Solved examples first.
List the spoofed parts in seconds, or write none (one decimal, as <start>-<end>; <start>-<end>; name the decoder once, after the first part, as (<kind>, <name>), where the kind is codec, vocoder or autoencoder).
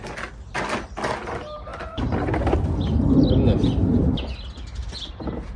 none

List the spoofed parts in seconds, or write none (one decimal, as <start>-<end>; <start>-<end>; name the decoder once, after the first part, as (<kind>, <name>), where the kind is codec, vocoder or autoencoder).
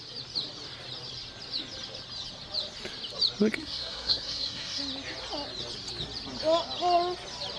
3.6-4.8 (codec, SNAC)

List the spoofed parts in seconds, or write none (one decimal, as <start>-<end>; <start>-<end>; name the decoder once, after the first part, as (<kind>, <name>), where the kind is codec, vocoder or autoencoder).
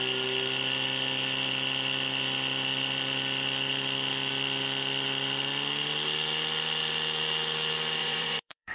8.0-8.7 (vocoder, Vocos)